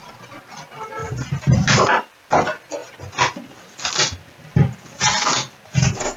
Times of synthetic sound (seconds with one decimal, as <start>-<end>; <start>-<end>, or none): 1.0-2.0